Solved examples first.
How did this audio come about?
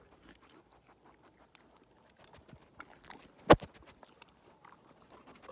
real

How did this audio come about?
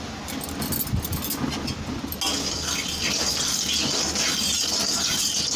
real